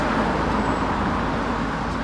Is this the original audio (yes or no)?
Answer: yes